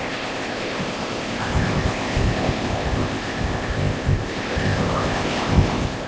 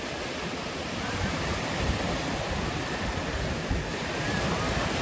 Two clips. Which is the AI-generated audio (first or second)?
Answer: first